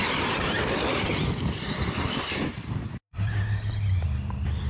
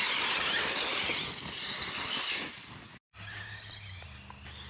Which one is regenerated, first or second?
first